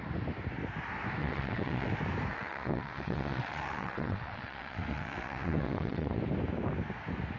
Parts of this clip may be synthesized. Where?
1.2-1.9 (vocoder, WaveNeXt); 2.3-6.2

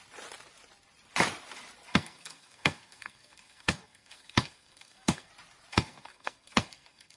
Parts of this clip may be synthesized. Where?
1.9-5.3 (codec, SNAC); 5.7-7.2

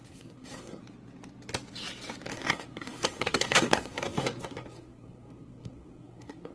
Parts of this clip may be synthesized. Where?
0.0-0.8 (codec, SNAC); 2.3-6.5

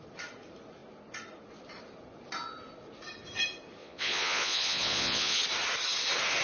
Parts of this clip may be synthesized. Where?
3.8-5.4 (vocoder, Vocos)

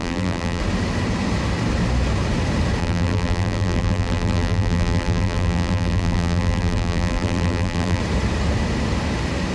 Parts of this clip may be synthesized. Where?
0.0-0.6 (vocoder, BigVGAN v2); 2.8-8.0

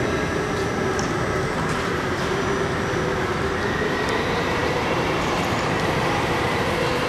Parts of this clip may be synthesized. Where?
4.6-6.0 (vocoder, BigVGAN v2)

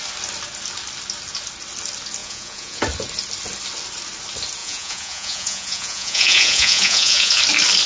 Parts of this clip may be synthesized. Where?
2.2-2.8 (vocoder, Vocos); 4.6-7.4